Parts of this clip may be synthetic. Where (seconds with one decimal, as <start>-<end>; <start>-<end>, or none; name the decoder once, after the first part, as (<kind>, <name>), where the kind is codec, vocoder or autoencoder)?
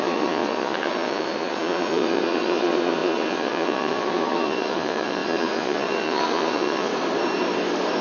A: 0.0-6.9 (vocoder, Vocos)